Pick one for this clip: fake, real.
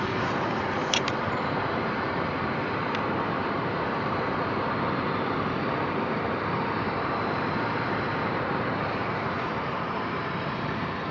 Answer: fake